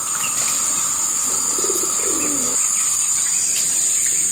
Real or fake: fake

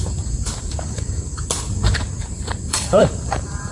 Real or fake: fake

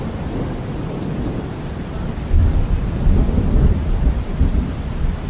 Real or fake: fake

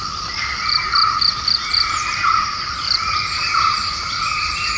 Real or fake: fake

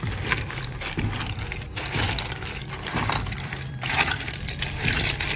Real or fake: fake